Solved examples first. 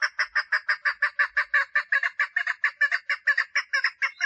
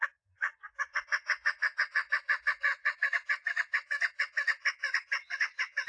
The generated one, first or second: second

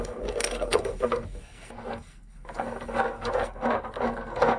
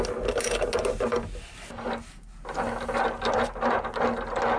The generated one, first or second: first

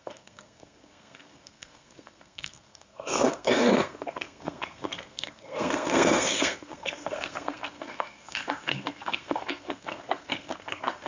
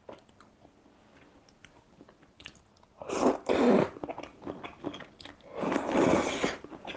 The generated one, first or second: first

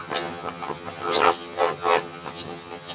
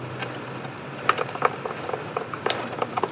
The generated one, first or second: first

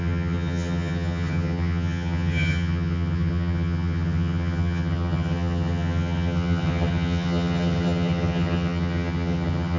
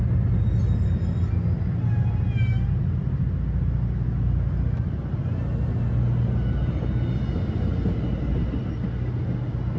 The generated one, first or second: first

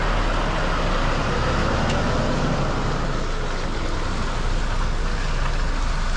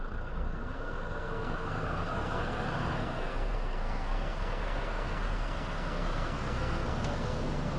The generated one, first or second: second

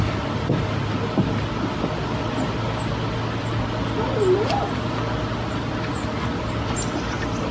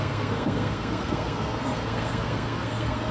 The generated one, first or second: second